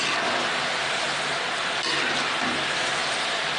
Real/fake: real